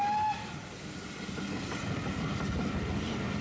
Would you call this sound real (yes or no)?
yes